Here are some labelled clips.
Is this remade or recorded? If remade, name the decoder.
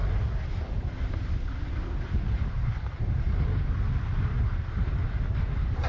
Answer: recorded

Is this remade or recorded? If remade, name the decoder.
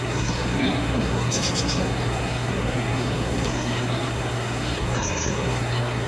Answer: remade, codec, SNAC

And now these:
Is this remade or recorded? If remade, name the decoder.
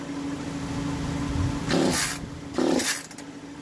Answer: recorded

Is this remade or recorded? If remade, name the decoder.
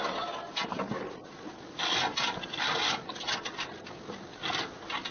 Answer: recorded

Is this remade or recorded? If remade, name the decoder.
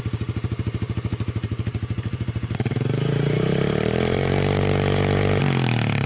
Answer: remade, vocoder, BigVGAN v2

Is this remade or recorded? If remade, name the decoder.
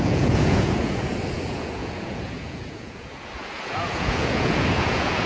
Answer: remade, vocoder, Vocos